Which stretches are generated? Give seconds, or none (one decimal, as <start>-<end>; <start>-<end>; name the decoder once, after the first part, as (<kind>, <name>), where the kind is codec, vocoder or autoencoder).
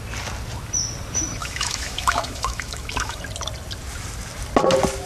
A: 1.4-3.2 (autoencoder, DAC-VAE)